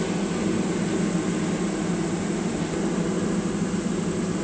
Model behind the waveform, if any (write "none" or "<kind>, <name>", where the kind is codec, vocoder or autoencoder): none